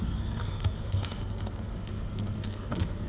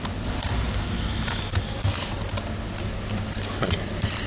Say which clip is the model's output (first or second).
first